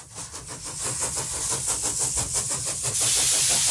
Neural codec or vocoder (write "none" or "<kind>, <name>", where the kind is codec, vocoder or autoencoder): none